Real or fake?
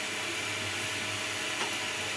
real